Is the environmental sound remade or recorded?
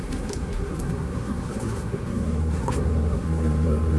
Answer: remade